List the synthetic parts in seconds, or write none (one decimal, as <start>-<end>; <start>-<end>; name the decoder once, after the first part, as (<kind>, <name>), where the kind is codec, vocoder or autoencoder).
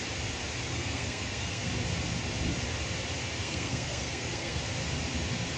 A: 0.7-1.7 (codec, SNAC); 3.4-4.6